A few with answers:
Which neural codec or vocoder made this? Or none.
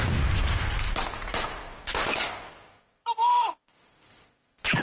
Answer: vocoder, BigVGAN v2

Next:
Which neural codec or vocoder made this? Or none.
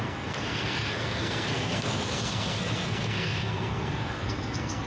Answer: codec, SNAC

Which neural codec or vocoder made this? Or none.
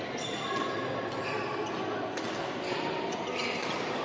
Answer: none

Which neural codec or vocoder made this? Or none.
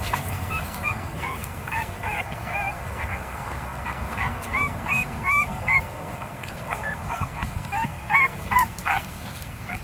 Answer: codec, SNAC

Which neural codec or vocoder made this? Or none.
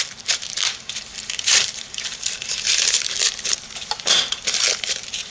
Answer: vocoder, BigVGAN v2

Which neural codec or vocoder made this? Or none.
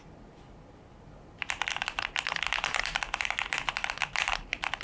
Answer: none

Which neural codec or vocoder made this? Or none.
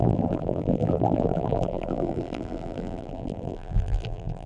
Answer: vocoder, BigVGAN v2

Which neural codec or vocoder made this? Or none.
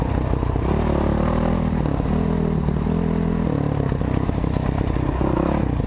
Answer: none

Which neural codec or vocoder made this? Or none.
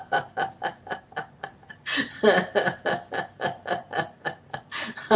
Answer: none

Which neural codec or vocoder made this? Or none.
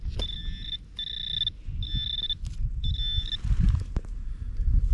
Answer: none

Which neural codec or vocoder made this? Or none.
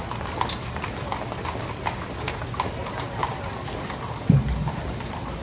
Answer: none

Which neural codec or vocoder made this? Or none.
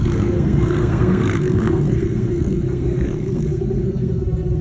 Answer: codec, SNAC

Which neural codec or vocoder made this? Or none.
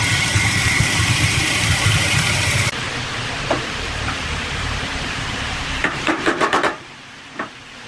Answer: vocoder, BigVGAN v2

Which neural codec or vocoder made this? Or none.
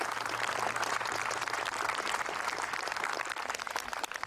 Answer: none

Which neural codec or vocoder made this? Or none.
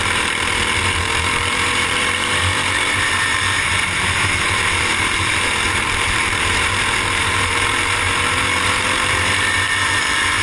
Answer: vocoder, BigVGAN v2